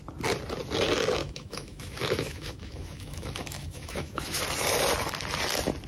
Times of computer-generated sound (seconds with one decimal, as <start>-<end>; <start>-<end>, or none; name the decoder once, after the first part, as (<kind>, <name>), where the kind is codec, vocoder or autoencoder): 1.2-4.4 (autoencoder, DAC-VAE)